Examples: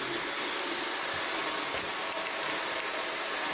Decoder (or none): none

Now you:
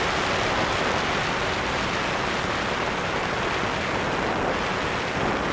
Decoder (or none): none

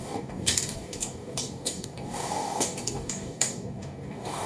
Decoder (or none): codec, DAC